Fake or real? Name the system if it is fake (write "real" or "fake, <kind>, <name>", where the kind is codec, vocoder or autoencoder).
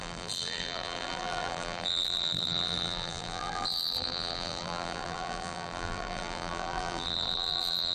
fake, vocoder, BigVGAN v2